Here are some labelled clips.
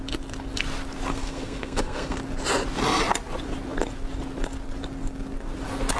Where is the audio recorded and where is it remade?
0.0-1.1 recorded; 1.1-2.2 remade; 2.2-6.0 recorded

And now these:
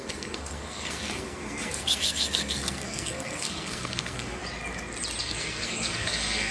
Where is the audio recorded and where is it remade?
0.0-4.4 remade; 4.4-5.2 recorded; 5.2-6.5 remade

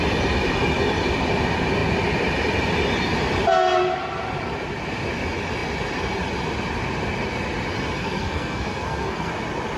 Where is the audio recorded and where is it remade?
0.0-8.0 recorded; 8.0-9.3 remade; 9.3-9.8 recorded

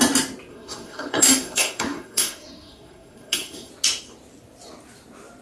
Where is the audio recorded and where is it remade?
0.0-0.5 recorded; 0.5-3.7 remade; 3.7-5.4 recorded